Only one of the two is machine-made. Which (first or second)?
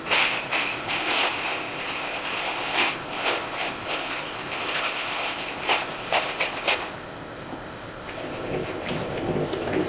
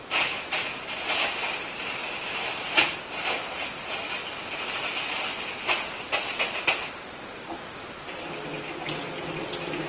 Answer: first